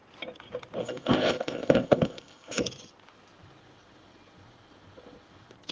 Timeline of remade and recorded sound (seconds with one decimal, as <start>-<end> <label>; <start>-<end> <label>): 0.0-0.8 recorded; 0.8-2.6 remade; 2.6-5.7 recorded